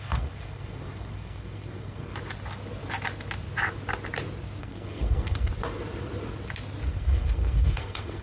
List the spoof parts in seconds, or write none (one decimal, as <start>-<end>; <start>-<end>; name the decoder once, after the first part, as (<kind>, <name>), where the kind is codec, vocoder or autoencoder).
0.0-2.1 (codec, SNAC); 4.6-5.5; 6.9-8.2